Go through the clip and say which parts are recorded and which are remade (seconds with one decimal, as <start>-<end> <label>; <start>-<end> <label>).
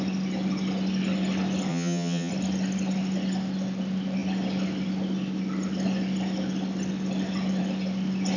0.0-1.7 recorded; 1.7-2.3 remade; 2.3-8.4 recorded